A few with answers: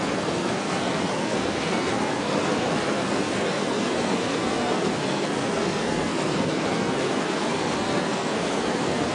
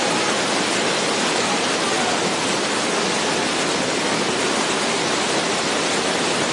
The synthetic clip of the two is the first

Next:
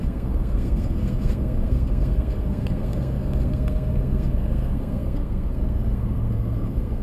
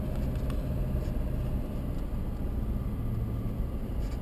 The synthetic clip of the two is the first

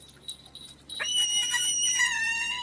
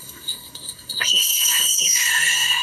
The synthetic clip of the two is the second